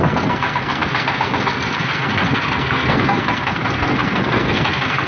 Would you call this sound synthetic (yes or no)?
yes